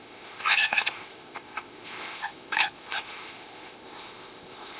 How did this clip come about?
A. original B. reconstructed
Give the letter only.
B